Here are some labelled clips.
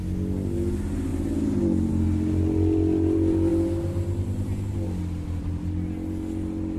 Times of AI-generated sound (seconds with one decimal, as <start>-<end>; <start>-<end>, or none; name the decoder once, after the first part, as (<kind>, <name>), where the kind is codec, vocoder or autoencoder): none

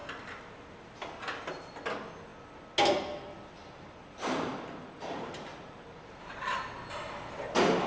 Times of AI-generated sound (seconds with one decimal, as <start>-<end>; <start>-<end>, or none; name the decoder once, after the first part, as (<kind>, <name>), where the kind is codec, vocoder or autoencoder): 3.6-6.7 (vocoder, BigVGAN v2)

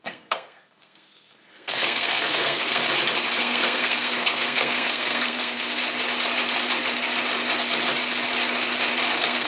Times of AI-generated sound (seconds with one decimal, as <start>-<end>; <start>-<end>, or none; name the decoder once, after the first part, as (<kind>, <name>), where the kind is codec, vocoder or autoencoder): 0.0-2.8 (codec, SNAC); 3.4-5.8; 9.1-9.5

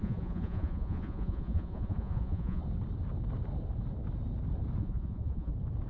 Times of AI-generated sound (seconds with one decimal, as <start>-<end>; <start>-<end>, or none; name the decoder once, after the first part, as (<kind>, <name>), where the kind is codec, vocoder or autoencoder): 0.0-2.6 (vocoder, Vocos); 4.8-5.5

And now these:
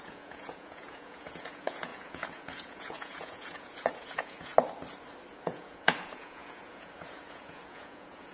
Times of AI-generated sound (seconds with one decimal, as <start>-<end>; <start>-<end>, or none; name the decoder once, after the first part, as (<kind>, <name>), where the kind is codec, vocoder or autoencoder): 0.0-4.5 (vocoder, Vocos); 5.3-8.3

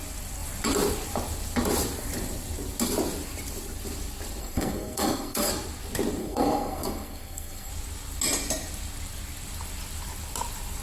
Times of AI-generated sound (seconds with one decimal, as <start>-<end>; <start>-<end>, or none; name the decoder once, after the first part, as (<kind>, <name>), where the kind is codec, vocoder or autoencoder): 4.4-5.5 (codec, SNAC); 6.2-7.7